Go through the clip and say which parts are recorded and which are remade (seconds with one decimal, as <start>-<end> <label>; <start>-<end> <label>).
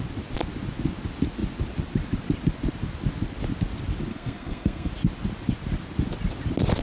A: 0.0-4.1 recorded; 4.1-4.9 remade; 4.9-6.8 recorded